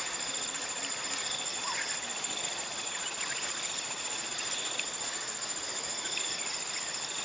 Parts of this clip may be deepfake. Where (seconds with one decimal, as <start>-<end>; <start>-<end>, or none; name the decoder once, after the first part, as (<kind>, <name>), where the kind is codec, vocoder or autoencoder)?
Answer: 1.5-4.5 (vocoder, Vocos)